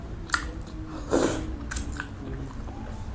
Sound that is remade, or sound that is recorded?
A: recorded